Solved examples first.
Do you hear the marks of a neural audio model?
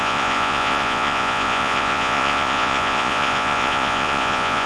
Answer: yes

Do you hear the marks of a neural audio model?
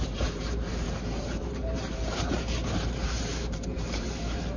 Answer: yes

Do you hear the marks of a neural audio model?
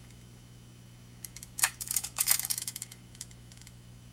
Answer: yes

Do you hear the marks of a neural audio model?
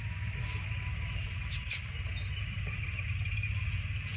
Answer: no